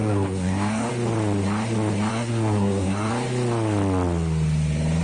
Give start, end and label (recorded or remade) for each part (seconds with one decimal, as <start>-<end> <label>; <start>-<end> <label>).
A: 0.0-0.9 remade; 0.9-2.1 recorded; 2.1-3.1 remade; 3.1-5.0 recorded